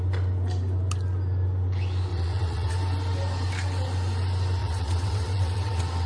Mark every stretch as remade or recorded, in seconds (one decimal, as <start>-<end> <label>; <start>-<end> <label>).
0.0-2.1 recorded; 2.1-2.7 remade; 2.7-4.6 recorded; 4.6-6.1 remade